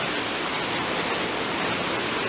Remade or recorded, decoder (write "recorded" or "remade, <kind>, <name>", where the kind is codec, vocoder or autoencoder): recorded